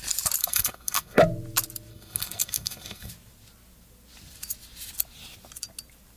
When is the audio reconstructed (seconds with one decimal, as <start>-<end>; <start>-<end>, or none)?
0.4-1.2; 1.9-3.1